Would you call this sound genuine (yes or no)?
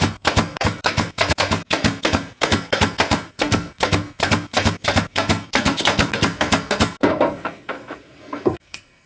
no